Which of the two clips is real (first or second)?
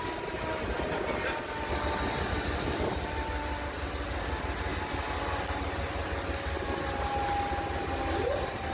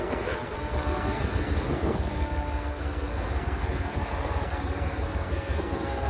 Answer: first